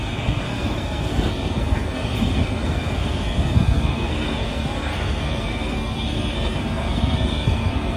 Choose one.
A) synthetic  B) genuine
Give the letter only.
A